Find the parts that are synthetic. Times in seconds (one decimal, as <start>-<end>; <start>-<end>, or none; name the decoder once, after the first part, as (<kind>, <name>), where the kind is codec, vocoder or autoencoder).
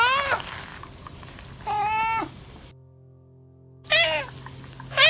none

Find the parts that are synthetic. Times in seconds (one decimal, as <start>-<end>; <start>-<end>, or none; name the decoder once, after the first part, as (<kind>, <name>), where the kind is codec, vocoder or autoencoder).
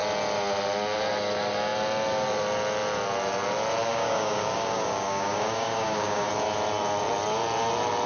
3.9-6.3 (codec, DAC)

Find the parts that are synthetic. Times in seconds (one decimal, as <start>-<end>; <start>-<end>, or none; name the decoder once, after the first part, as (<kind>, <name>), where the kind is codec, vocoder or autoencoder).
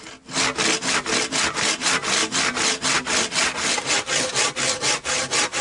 none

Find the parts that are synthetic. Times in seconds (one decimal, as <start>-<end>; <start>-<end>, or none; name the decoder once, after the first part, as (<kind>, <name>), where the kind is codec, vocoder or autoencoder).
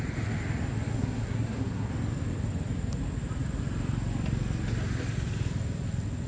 0.9-1.9 (codec, SNAC)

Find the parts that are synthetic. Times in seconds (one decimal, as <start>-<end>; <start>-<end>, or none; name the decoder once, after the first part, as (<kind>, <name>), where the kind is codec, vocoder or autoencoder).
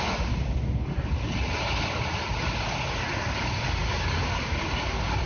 none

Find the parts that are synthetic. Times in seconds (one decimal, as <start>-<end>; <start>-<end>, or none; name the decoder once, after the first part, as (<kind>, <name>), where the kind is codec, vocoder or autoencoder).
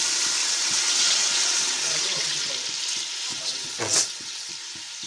0.4-2.5 (vocoder, WaveNeXt); 3.3-4.5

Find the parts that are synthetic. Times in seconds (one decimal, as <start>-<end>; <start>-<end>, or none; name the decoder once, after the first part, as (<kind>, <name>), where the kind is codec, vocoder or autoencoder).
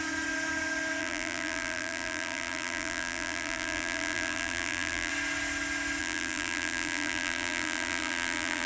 1.0-5.1 (vocoder, BigVGAN v2); 6.0-8.7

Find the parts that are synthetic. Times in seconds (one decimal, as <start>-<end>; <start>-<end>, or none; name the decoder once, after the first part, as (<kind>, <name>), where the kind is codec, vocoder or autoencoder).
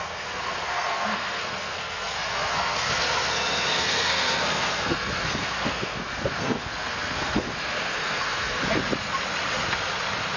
0.0-8.6 (codec, SNAC)